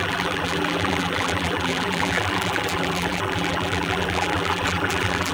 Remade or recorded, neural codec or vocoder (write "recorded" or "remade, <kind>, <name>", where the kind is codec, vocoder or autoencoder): remade, vocoder, BigVGAN v2